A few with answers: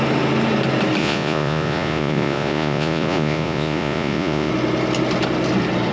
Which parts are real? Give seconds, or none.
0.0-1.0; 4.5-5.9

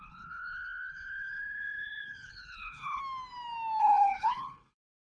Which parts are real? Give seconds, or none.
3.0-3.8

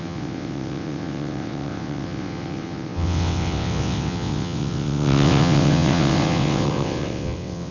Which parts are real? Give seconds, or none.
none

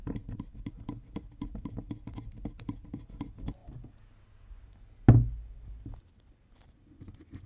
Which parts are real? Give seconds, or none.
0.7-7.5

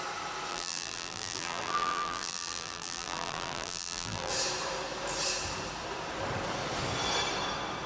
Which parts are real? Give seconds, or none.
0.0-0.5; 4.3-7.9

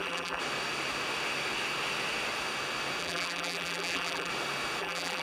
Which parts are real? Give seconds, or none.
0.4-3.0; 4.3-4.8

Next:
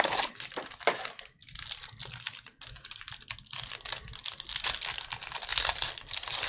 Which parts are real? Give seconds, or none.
0.0-5.5